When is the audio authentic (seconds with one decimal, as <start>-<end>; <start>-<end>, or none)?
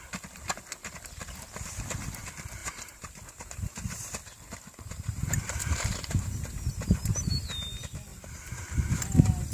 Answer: 0.0-2.6; 7.4-9.5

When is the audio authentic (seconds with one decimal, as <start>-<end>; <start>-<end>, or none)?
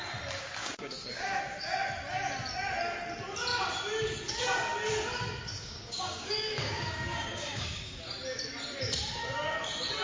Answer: 0.0-0.6; 1.4-5.5; 8.1-10.0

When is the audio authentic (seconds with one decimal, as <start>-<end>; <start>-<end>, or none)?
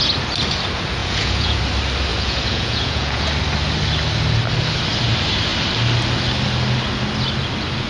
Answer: 0.0-1.0; 1.6-2.1; 3.3-7.9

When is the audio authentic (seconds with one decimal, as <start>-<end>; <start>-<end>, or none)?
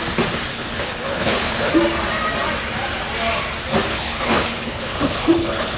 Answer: 0.0-0.5; 1.7-3.9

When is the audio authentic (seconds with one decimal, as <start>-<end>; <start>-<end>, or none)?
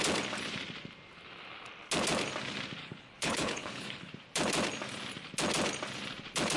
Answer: 0.0-2.8; 4.1-6.6